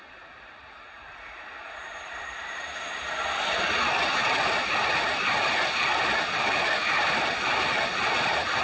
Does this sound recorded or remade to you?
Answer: recorded